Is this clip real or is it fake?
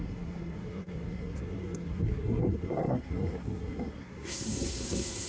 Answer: fake